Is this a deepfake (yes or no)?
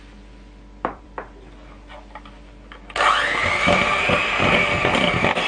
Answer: yes